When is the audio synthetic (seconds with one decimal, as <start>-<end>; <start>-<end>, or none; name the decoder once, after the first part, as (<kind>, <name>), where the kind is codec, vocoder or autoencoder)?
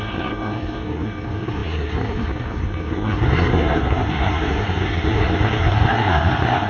0.0-6.7 (codec, SNAC)